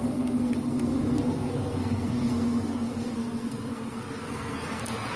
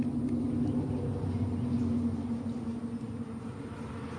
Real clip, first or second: second